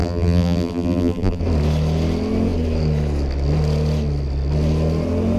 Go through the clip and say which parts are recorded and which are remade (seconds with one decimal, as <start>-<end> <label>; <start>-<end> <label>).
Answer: 0.0-1.4 remade; 1.4-5.4 recorded